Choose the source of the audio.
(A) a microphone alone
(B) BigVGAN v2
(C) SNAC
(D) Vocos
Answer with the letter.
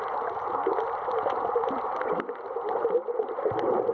A